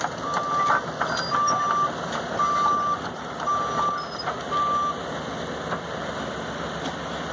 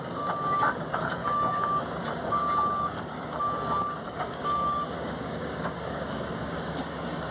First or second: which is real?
first